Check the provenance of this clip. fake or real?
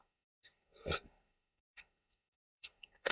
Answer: fake